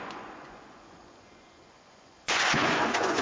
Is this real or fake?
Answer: fake